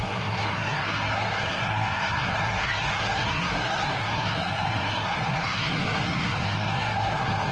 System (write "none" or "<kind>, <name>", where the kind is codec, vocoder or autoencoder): codec, SNAC